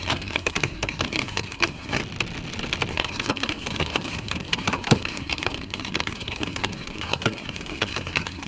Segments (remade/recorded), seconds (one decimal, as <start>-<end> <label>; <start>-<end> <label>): 0.0-2.0 remade; 2.0-2.9 recorded; 2.9-8.5 remade